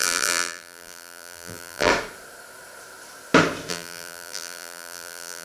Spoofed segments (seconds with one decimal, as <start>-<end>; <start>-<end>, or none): 0.0-1.9; 3.7-5.4